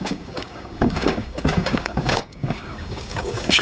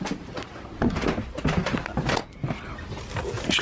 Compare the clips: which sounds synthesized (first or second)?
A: first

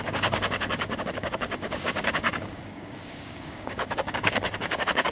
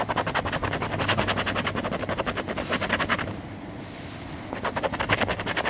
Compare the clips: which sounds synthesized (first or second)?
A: first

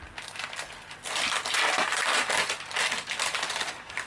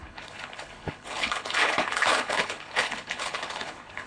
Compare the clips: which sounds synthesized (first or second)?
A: second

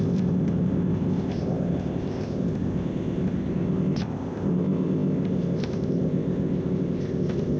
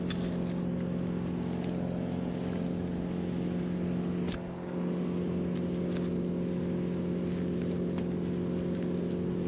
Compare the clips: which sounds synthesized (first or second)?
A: first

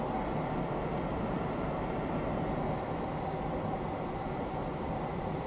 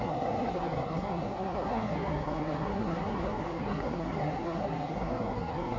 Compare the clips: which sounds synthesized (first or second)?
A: second